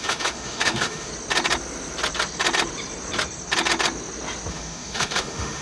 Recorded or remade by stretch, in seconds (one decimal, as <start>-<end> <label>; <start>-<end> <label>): 0.0-1.1 remade; 1.1-4.5 recorded; 4.5-5.6 remade